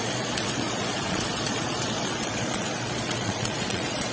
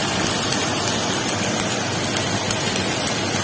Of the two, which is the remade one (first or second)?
first